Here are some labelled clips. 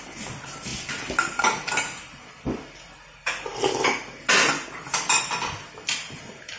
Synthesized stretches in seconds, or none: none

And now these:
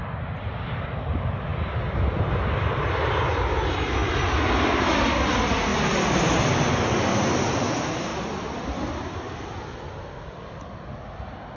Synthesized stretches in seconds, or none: none

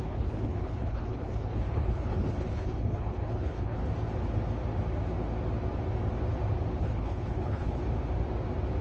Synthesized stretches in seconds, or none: 0.0-3.8; 6.8-7.8